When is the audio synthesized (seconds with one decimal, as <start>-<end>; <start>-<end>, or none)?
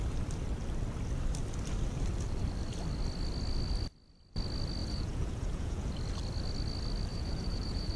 4.8-5.9; 7.1-8.0